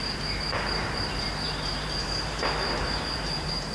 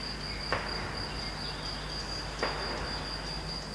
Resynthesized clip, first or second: first